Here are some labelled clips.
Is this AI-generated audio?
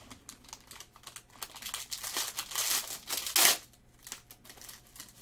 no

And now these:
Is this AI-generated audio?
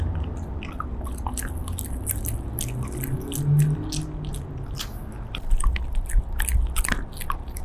no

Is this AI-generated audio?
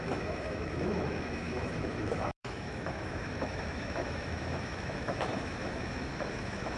yes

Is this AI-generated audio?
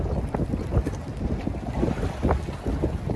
no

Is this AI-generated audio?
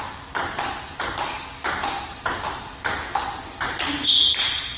no